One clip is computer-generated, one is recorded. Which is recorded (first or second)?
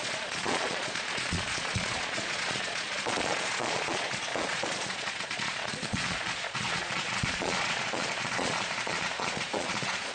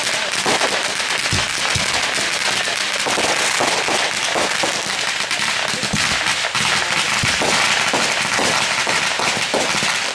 second